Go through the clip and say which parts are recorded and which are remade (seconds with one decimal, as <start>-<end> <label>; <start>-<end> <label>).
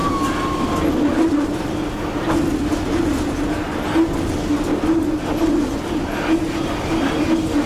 0.0-7.7 recorded